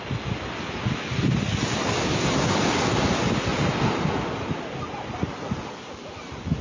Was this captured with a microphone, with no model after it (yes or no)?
yes